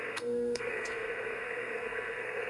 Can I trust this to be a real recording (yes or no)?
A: no